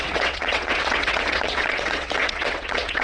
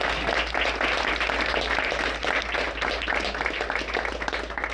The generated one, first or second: first